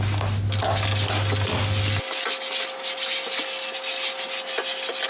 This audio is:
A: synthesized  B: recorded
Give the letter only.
B